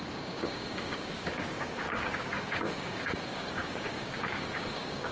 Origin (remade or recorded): remade